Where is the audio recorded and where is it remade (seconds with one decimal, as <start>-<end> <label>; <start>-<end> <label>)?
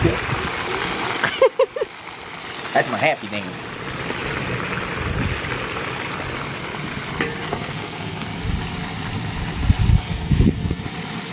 0.0-7.4 recorded; 7.4-8.3 remade; 8.3-9.9 recorded; 9.9-10.8 remade; 10.8-11.3 recorded